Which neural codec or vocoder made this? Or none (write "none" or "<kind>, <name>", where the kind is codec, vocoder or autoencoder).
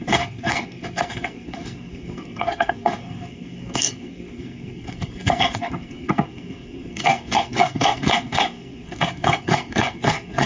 codec, SNAC